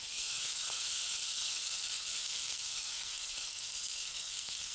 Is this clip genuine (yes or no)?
no